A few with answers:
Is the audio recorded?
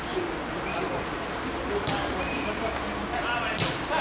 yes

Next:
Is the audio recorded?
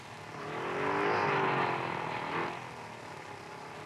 yes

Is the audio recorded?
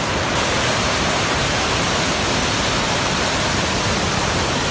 yes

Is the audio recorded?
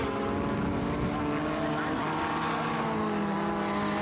yes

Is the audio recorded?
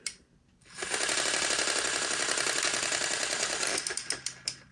yes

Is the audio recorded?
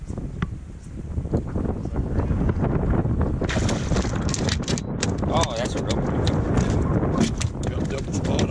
yes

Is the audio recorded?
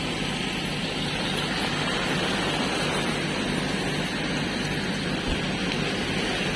yes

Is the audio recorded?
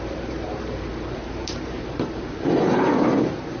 no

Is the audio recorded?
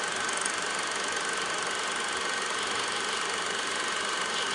yes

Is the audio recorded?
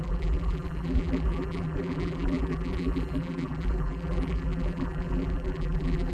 no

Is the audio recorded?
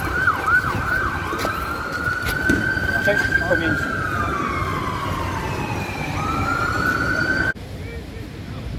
yes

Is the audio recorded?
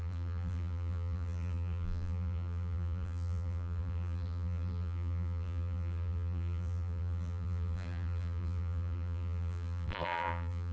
no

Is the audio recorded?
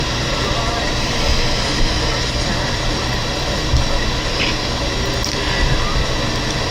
yes